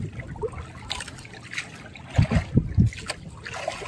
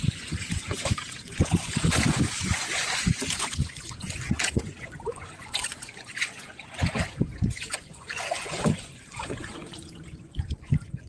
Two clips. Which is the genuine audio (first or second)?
first